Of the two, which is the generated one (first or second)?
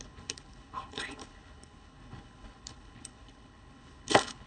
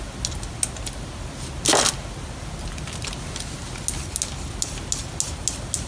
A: first